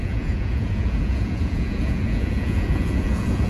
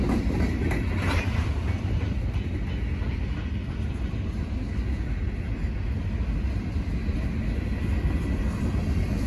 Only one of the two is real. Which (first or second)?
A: second